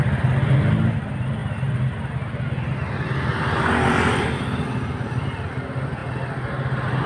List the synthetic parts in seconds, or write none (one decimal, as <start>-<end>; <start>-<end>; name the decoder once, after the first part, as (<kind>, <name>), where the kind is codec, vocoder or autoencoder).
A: none